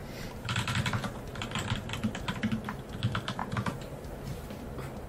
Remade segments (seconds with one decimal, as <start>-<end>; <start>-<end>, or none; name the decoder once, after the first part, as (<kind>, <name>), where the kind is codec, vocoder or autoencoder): 0.0-0.8 (vocoder, BigVGAN v2); 1.3-2.1; 3.4-4.0